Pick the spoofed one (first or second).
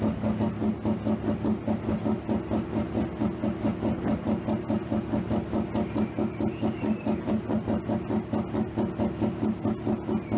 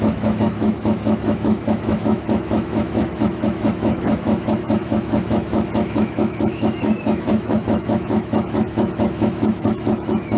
second